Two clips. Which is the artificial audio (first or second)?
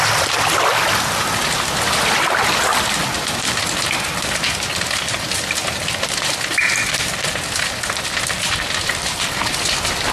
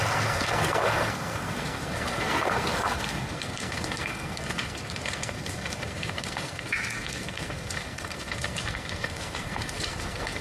second